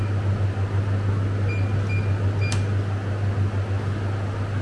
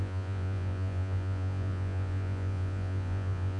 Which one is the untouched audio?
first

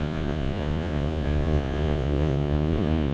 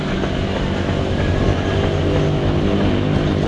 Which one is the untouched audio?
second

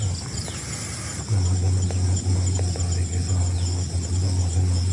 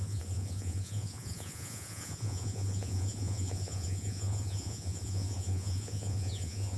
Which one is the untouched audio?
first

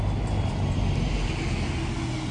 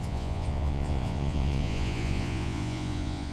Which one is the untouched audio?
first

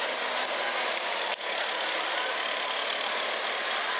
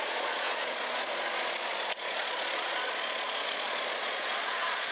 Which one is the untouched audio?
first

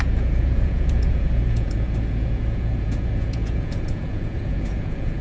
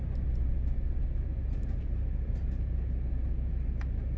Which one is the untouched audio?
second